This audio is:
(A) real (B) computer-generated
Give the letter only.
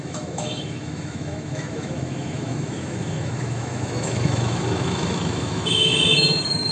B